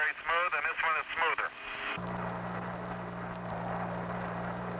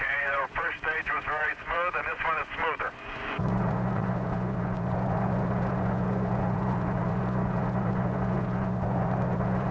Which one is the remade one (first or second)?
second